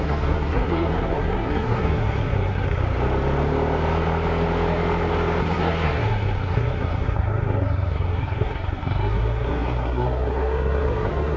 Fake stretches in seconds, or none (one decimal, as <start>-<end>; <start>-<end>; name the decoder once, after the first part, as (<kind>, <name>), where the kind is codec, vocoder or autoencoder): 0.0-2.8 (codec, SNAC); 5.4-11.4